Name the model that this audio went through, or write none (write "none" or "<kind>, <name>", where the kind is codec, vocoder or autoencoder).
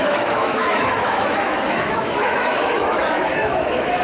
autoencoder, DAC-VAE